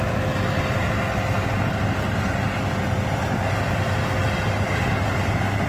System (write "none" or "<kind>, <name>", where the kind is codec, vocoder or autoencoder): none